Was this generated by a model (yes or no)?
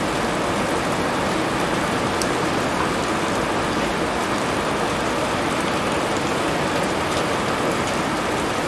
no